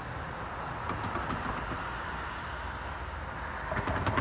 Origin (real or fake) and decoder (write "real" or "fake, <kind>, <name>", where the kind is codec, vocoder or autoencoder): real